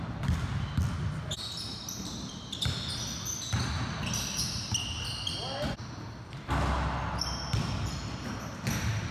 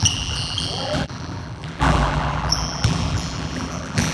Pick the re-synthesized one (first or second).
second